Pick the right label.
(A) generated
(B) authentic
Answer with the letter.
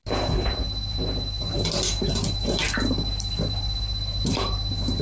B